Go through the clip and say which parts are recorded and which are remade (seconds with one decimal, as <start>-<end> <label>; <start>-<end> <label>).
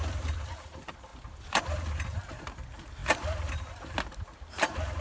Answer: 0.0-5.0 recorded